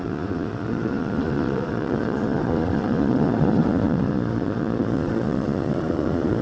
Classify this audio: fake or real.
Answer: fake